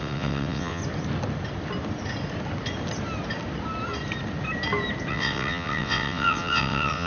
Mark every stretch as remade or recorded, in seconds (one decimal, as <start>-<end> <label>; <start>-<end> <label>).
0.0-0.8 remade; 0.8-5.1 recorded; 5.1-7.1 remade